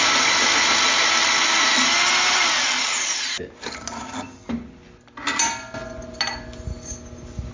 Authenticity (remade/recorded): recorded